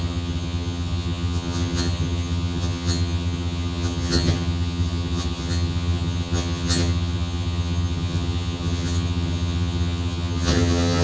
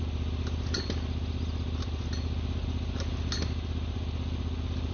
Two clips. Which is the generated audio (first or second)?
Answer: first